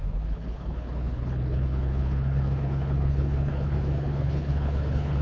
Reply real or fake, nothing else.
fake